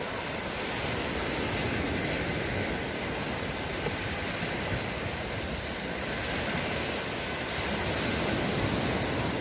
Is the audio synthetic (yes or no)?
no